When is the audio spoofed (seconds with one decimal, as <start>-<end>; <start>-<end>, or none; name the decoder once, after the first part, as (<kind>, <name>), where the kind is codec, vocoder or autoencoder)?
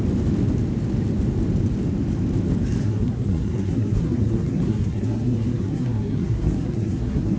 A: 2.8-7.4 (codec, SNAC)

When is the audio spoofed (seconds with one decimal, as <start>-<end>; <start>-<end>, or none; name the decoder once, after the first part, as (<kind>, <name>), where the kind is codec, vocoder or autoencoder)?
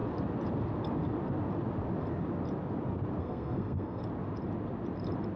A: 3.2-4.0 (codec, SNAC)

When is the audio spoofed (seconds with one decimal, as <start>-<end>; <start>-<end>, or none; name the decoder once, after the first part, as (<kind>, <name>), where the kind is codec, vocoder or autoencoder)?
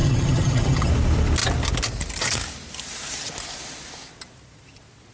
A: 0.0-0.9 (vocoder, HiFi-GAN)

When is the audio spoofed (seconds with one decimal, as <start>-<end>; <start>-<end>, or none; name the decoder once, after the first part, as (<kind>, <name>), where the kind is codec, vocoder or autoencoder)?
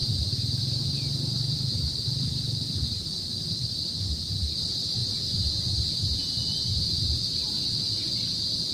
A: none